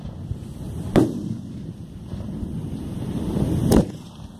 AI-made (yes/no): no